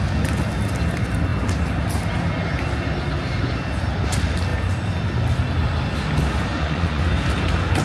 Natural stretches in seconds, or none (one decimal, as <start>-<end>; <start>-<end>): 0.0-6.5; 7.0-7.8